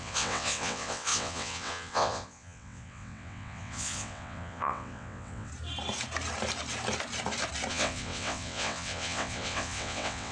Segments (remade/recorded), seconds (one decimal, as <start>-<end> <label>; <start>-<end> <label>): 0.0-5.5 remade; 5.5-7.7 recorded; 7.7-10.3 remade